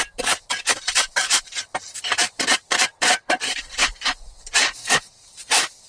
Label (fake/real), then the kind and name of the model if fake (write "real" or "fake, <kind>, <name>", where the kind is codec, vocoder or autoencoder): fake, vocoder, BigVGAN v2